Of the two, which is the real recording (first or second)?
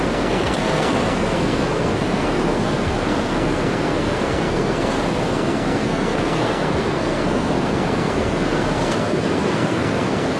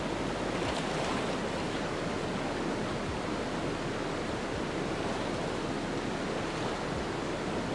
second